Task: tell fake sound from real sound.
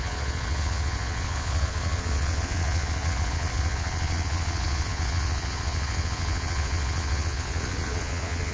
fake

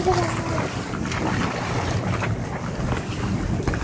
real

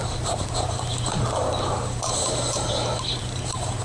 fake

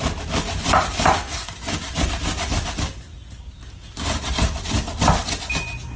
real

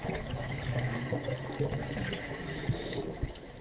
fake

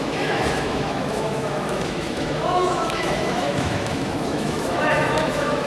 fake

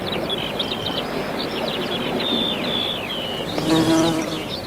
real